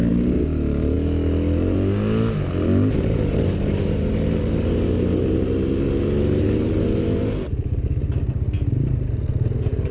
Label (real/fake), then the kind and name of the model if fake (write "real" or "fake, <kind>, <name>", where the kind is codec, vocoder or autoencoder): real